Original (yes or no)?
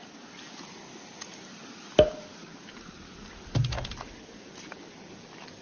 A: yes